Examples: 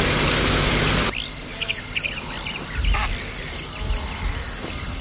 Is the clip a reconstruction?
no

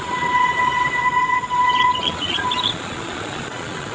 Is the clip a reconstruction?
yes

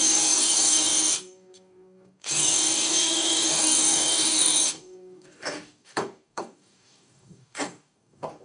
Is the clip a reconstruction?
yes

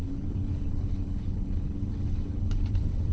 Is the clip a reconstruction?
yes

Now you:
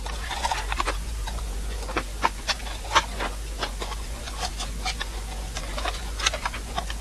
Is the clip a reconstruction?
yes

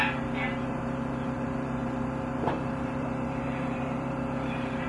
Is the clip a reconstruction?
yes